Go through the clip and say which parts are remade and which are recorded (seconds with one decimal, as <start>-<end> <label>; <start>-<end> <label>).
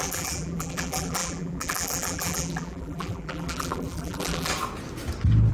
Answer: 0.0-4.5 remade; 4.5-5.5 recorded